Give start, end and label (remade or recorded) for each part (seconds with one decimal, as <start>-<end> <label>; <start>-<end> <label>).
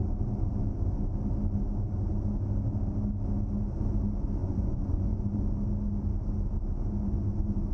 0.0-4.4 recorded; 4.4-5.5 remade; 5.5-7.7 recorded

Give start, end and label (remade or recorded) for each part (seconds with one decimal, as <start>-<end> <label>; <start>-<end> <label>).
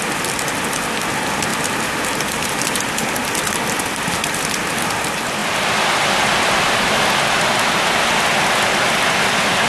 0.0-1.5 recorded; 1.5-2.8 remade; 2.8-9.7 recorded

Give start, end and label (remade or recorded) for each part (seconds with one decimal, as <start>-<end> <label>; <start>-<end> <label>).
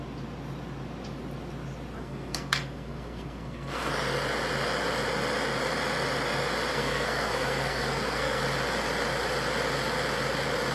0.0-2.0 recorded; 2.0-3.9 remade; 3.9-6.7 recorded; 6.7-8.4 remade; 8.4-10.7 recorded